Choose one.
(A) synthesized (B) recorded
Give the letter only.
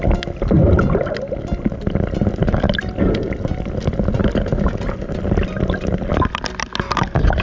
B